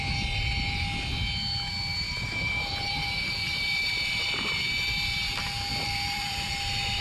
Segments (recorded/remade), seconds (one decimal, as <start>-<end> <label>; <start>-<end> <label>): 0.0-1.9 recorded; 1.9-4.6 remade; 4.6-5.7 recorded; 5.7-6.5 remade; 6.5-7.0 recorded